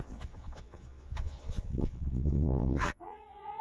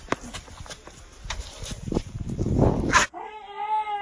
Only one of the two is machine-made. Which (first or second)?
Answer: first